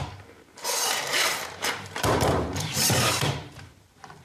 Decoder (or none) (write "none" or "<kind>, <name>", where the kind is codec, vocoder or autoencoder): vocoder, BigVGAN v2